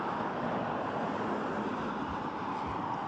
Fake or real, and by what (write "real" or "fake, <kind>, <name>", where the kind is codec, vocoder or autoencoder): real